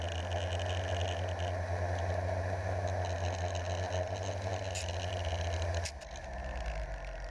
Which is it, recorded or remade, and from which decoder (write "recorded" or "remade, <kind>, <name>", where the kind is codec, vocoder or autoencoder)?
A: recorded